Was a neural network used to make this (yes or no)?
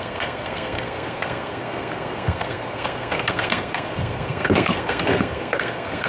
yes